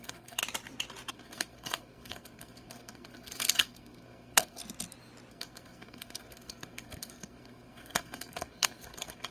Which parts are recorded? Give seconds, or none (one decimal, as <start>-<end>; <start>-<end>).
0.4-1.1; 4.6-5.3